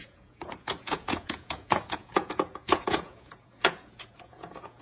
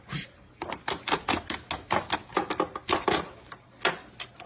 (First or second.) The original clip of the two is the second